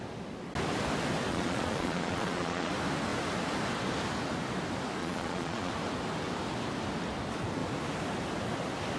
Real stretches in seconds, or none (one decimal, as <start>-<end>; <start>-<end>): 0.0-1.3; 2.7-5.0; 5.7-9.0